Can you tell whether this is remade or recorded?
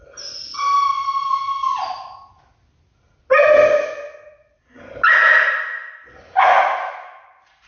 recorded